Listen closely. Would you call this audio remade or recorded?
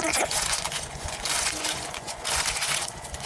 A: remade